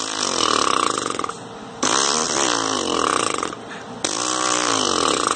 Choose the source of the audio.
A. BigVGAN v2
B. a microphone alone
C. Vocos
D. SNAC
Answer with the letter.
B